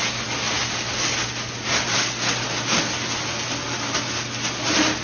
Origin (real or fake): real